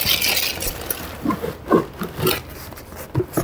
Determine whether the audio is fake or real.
real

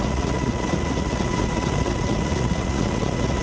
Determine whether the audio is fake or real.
fake